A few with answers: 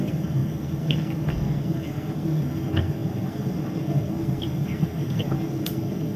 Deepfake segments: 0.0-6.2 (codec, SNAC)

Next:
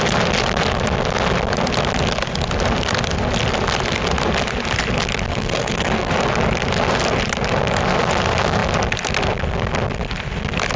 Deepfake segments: 5.3-6.1 (codec, SNAC)

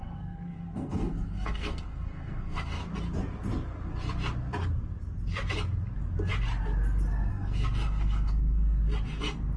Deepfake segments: 0.0-2.8 (codec, SNAC); 7.3-8.8

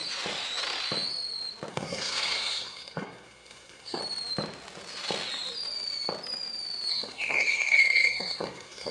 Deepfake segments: 1.7-4.0 (codec, SNAC); 6.9-8.9

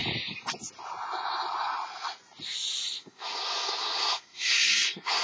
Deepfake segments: 3.0-5.2 (codec, SNAC)

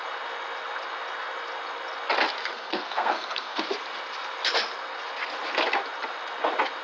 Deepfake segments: 2.4-3.6 (codec, SNAC)

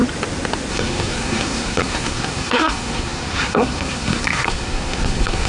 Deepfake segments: 0.7-5.5 (codec, SNAC)